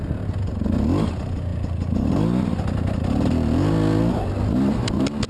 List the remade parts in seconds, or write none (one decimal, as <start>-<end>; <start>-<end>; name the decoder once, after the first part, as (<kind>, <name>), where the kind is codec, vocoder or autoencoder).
none

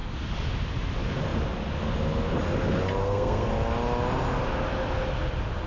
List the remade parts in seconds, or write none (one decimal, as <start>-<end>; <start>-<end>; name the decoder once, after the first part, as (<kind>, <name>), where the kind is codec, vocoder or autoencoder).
3.0-3.5 (codec, SNAC)

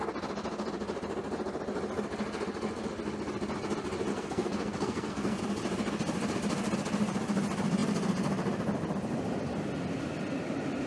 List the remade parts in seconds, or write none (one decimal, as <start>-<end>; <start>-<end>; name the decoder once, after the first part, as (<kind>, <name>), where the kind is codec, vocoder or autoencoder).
4.1-5.4 (codec, SNAC)

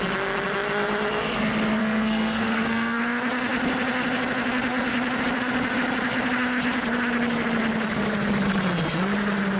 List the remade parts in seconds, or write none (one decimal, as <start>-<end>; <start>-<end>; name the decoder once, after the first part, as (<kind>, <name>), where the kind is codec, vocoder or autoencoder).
1.8-3.0 (codec, SNAC)

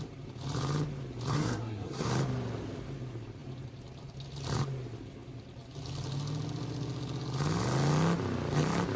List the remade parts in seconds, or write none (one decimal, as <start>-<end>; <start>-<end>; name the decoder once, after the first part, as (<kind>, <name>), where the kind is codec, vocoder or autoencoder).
1.3-2.1 (codec, SNAC)